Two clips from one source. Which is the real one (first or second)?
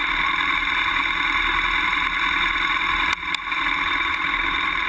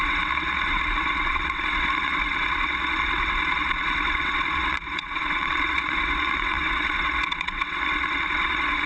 first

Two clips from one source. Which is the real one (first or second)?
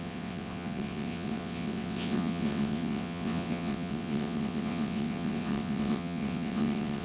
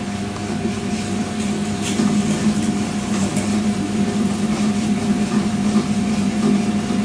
second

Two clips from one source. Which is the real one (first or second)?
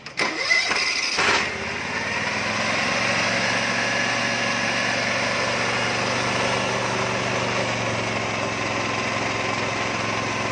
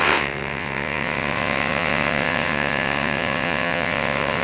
first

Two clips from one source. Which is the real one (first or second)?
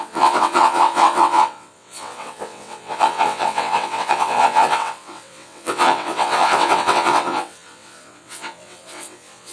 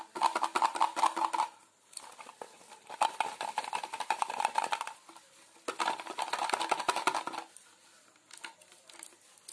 second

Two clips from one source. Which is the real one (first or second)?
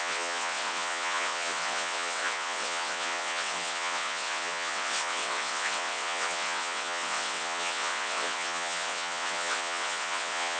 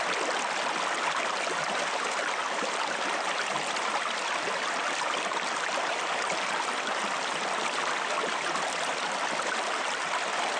second